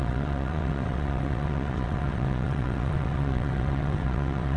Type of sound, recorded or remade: remade